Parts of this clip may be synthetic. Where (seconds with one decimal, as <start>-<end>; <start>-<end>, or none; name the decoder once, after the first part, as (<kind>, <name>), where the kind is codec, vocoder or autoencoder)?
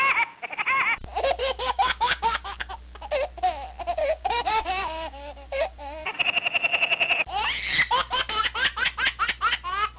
1.4-2.7 (codec, DAC); 4.0-6.2